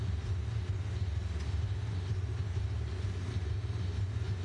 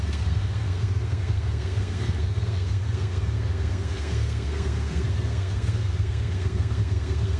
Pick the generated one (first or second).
second